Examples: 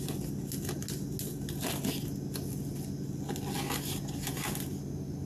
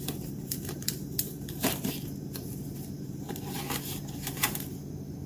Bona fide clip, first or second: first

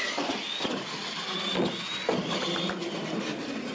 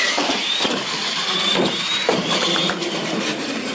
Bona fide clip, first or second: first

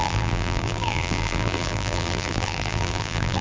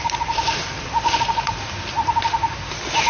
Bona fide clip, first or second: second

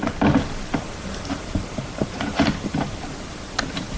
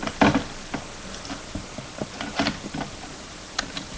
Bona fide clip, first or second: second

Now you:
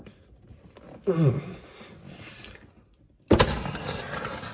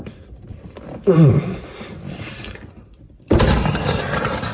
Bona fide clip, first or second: first